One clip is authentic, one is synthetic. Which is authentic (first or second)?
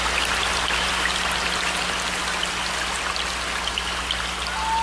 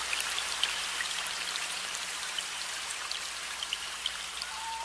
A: first